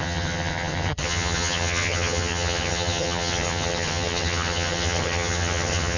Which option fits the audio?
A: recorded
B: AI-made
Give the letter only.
B